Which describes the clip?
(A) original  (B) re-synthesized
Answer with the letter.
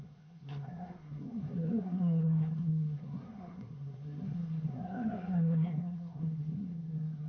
B